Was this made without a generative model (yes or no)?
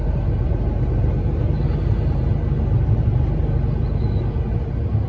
yes